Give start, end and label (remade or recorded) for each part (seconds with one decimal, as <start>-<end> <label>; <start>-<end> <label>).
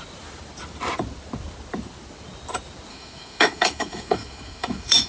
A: 0.0-2.9 recorded; 2.9-5.1 remade